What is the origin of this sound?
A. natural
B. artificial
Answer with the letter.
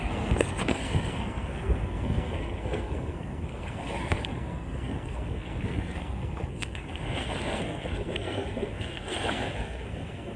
B